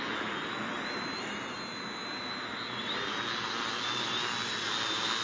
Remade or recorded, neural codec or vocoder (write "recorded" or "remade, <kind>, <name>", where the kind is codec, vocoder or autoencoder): recorded